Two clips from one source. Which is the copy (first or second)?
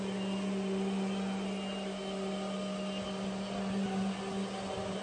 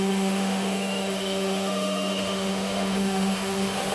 second